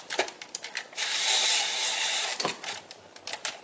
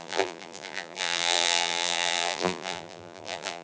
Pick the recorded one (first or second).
first